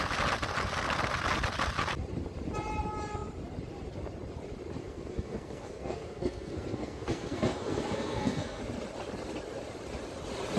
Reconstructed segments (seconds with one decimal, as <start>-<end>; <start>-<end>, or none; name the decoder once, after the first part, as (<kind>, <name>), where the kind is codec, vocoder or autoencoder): 4.8-8.6 (codec, SNAC)